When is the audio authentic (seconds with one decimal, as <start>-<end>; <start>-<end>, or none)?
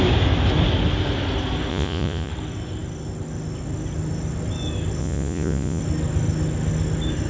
0.0-1.7; 2.3-5.0; 5.8-7.3